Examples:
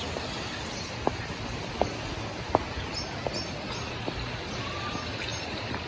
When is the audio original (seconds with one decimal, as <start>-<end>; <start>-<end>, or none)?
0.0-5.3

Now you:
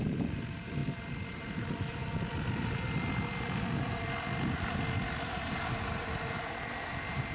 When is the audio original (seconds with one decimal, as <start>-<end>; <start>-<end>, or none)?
0.8-1.3; 2.0-5.7

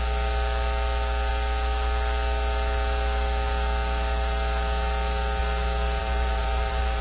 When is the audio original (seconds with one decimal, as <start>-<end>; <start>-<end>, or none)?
0.0-6.0

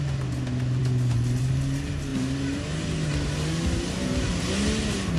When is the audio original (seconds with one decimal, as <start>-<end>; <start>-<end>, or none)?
0.0-5.2

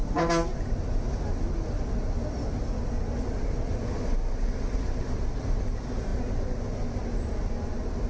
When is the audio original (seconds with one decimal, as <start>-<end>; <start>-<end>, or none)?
0.0-8.1

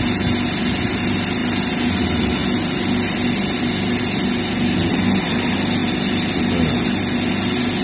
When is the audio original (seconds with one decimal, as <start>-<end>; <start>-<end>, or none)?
0.0-7.8

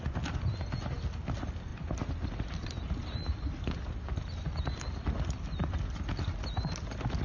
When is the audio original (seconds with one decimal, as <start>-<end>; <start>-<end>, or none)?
0.0-1.7; 6.0-7.2